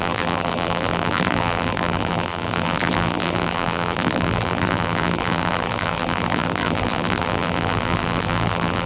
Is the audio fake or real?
fake